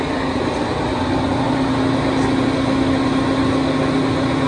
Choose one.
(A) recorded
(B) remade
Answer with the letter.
A